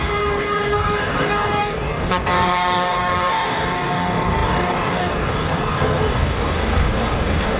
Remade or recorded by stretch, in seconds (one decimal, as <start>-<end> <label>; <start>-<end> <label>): 0.0-7.6 remade

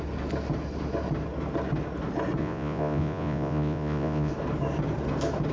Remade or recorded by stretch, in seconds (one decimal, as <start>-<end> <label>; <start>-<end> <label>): 0.0-2.4 recorded; 2.4-4.3 remade; 4.3-5.5 recorded

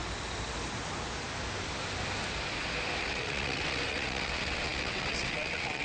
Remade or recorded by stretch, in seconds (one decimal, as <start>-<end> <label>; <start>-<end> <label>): 0.0-3.0 recorded; 3.0-5.8 remade

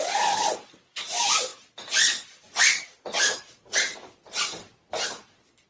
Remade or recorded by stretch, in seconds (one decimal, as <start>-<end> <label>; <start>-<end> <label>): 0.0-5.7 recorded

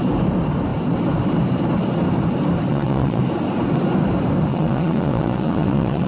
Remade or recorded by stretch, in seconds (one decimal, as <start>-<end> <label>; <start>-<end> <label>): 0.0-2.7 recorded; 2.7-3.2 remade; 3.2-4.5 recorded; 4.5-6.1 remade

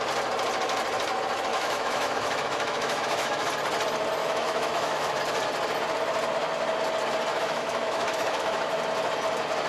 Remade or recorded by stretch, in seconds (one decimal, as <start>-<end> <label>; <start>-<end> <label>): 0.0-1.5 recorded; 1.5-3.5 remade; 3.5-4.2 recorded; 4.2-5.2 remade; 5.2-7.3 recorded; 7.3-8.7 remade; 8.7-9.7 recorded

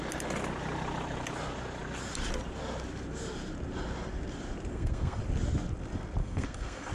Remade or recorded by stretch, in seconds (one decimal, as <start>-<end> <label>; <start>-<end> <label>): 0.0-4.7 recorded; 4.7-5.2 remade; 5.2-6.2 recorded; 6.2-6.9 remade

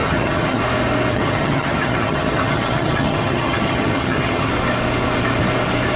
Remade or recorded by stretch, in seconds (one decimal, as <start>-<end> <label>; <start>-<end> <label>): 0.0-0.6 remade; 0.6-1.1 recorded; 1.1-4.5 remade; 4.5-6.0 recorded